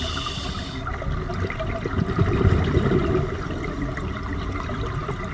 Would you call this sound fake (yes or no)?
no